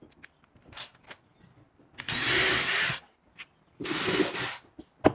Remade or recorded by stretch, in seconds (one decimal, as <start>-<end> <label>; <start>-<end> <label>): 0.0-5.1 recorded